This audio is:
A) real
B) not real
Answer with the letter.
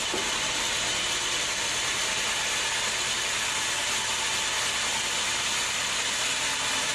A